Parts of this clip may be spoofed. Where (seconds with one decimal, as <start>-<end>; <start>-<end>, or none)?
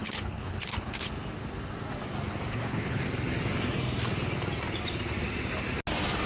0.0-1.1; 2.5-3.0